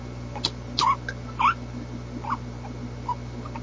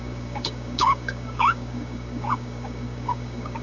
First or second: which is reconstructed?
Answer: second